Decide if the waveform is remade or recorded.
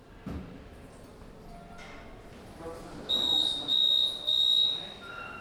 recorded